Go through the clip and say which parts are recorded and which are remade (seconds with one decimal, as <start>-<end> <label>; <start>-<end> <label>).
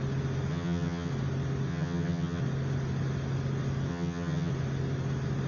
0.0-0.5 recorded; 0.5-1.1 remade; 1.1-1.7 recorded; 1.7-2.4 remade; 2.4-3.9 recorded; 3.9-4.5 remade; 4.5-5.5 recorded